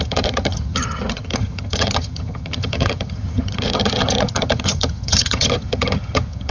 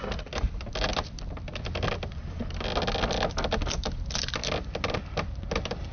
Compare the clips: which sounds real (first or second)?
second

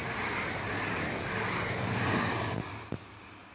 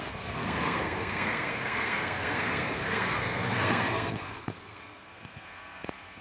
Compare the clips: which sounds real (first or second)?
first